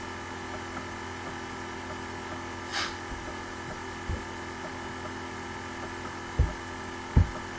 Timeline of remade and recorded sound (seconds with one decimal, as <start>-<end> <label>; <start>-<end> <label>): 0.0-7.6 recorded